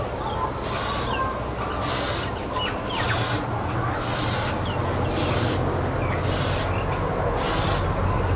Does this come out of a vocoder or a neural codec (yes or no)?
no